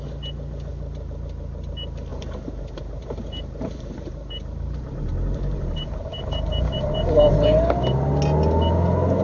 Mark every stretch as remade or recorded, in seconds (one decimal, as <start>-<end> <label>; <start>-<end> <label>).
0.0-0.7 recorded; 0.7-1.7 remade; 1.7-2.1 recorded; 2.1-7.3 remade; 7.3-9.2 recorded